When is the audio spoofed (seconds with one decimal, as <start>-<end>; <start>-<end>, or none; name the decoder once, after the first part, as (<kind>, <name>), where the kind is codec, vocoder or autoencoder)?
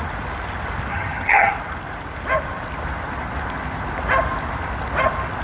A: 0.9-1.5 (vocoder, HiFi-GAN)